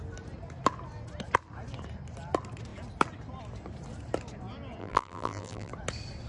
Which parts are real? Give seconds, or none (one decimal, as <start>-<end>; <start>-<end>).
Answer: 0.0-4.8; 5.7-6.3